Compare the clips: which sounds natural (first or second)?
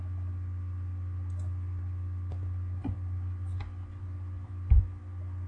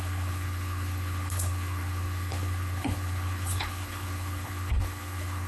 first